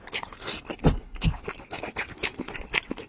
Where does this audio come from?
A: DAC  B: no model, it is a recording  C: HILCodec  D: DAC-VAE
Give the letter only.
B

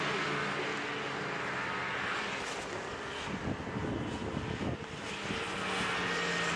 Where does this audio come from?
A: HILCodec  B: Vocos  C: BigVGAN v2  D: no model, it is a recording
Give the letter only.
D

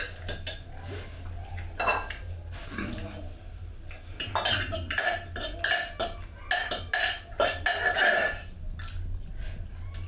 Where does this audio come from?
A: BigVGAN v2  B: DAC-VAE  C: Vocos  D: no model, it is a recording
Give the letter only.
D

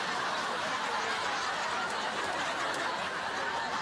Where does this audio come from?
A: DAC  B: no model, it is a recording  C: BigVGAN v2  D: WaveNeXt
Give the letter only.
B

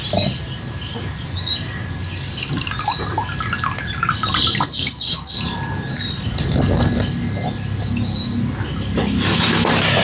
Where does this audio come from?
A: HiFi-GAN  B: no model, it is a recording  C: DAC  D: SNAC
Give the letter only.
B